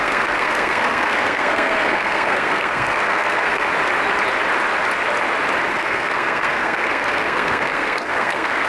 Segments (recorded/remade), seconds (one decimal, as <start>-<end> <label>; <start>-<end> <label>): 0.0-3.7 remade; 3.7-5.7 recorded; 5.7-8.7 remade